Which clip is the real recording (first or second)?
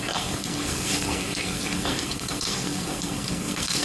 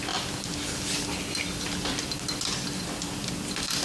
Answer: second